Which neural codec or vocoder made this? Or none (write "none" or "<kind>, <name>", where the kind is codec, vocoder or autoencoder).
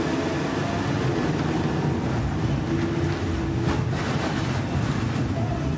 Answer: none